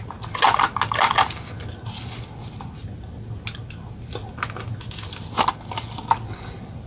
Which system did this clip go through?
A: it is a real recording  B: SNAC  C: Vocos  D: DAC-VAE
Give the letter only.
A